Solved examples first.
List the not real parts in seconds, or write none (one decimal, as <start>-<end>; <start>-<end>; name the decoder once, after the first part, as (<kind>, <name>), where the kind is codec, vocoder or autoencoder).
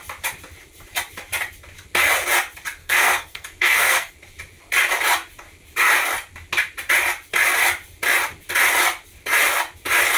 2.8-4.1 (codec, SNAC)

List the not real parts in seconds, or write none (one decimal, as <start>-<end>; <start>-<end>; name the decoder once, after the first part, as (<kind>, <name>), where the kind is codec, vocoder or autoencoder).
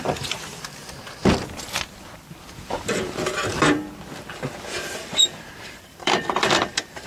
0.0-0.8 (vocoder, BigVGAN v2); 1.8-7.1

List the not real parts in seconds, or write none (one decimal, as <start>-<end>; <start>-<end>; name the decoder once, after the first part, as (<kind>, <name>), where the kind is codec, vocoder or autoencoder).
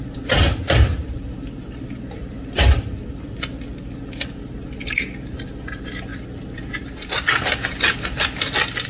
none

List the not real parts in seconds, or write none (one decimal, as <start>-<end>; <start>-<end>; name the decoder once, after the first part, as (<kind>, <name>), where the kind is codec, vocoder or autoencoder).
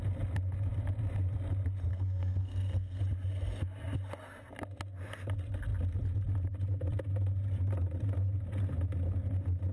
1.9-3.0 (codec, SNAC)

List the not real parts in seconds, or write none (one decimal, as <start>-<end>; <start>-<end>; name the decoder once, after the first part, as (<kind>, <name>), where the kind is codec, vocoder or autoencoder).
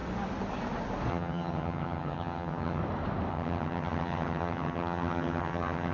1.1-2.8 (vocoder, HiFi-GAN); 3.3-5.9